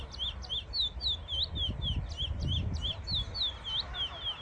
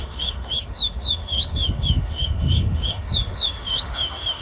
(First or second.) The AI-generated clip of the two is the second